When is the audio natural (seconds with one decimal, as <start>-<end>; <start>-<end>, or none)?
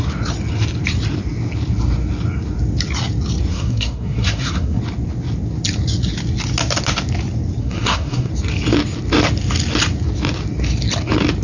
0.0-3.5; 4.8-7.6; 8.3-11.4